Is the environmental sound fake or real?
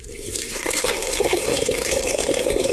fake